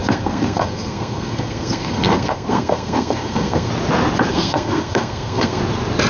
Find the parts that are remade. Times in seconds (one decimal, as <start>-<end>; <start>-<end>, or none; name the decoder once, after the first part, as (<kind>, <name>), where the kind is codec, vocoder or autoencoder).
0.0-3.7 (codec, SNAC); 4.3-5.6